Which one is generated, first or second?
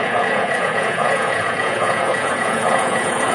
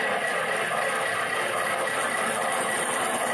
first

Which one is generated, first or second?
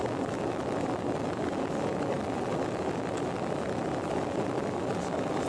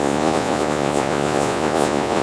second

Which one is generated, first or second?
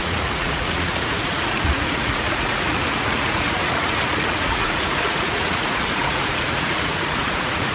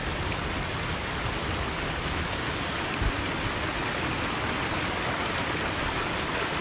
first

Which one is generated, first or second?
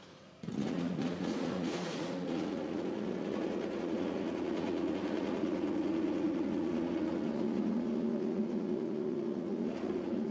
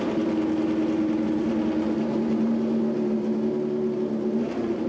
first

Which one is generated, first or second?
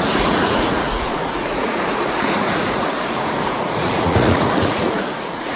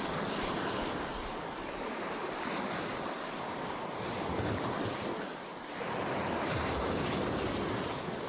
first